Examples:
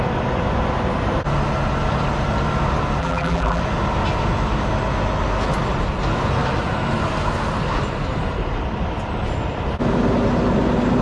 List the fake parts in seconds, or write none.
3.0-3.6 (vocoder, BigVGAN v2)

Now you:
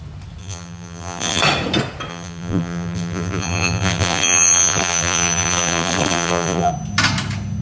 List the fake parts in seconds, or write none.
0.4-1.4 (vocoder, BigVGAN v2); 2.1-6.7

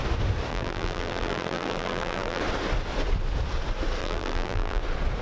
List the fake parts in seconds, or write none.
0.5-2.4 (vocoder, BigVGAN v2); 4.0-4.8

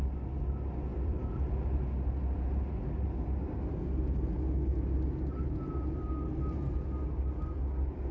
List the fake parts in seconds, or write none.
0.9-1.5 (vocoder, BigVGAN v2)

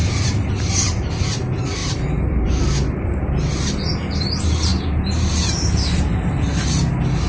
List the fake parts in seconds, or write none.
0.0-0.6 (vocoder, BigVGAN v2); 1.8-2.6; 4.7-5.3

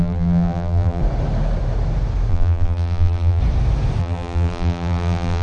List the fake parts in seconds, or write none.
0.0-1.0 (vocoder, BigVGAN v2); 2.3-3.4; 4.0-5.4

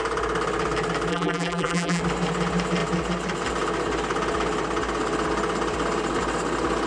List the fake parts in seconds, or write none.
1.1-2.0 (vocoder, BigVGAN v2)

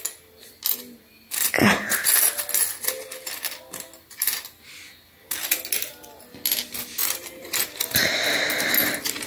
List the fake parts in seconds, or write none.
7.0-7.6 (vocoder, BigVGAN v2)